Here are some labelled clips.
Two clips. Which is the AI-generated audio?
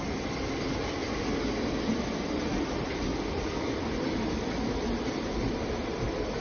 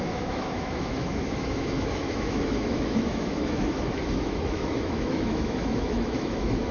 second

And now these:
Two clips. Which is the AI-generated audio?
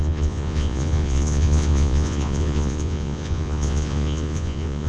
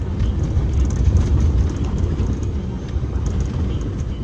first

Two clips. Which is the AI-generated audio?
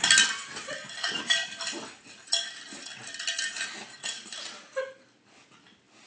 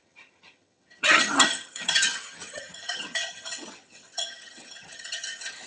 second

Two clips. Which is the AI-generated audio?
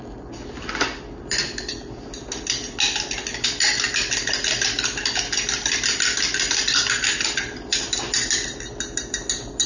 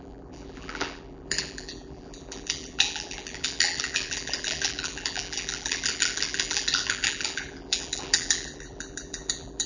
second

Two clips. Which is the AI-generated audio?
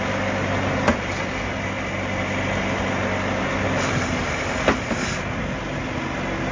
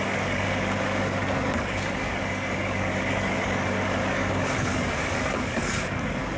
second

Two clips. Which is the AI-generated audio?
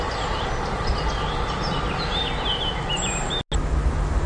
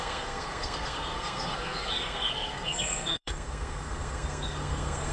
second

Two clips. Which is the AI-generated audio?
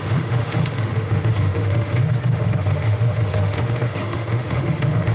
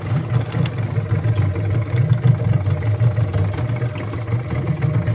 first